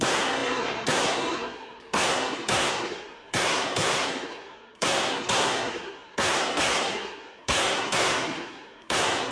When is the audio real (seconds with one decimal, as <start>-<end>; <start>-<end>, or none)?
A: none

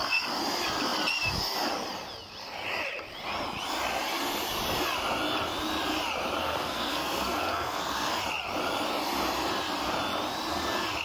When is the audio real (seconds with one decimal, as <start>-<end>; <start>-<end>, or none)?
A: 0.0-6.4; 8.2-11.0